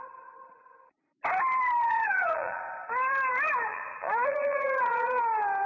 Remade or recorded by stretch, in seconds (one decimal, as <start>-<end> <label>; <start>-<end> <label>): 0.0-1.9 recorded; 1.9-2.6 remade; 2.6-3.7 recorded; 3.7-5.2 remade; 5.2-5.7 recorded